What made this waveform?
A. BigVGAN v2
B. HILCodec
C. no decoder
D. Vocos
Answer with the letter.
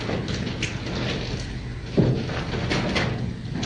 C